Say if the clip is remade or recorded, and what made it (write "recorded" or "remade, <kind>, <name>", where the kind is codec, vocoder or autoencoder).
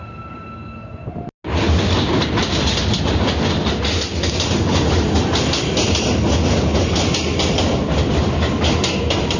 recorded